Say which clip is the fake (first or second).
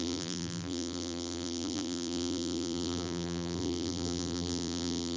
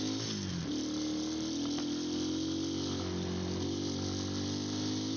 first